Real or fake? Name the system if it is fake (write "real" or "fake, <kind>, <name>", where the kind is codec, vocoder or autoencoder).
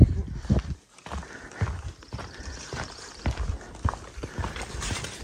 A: real